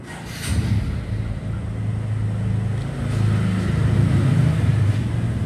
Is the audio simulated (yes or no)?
no